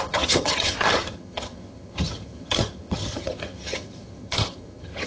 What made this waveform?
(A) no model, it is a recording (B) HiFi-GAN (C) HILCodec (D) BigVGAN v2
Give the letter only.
B